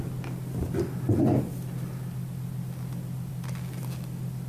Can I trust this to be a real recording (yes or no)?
yes